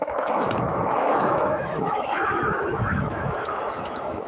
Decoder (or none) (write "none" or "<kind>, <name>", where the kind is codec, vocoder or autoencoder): autoencoder, DAC-VAE